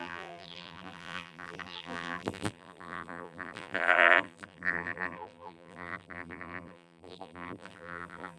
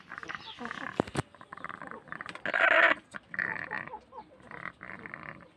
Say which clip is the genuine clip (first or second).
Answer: second